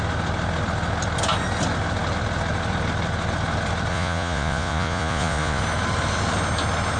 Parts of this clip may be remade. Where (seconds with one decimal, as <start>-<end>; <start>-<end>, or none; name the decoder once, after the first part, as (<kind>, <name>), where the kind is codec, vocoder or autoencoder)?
3.9-5.6 (vocoder, Vocos)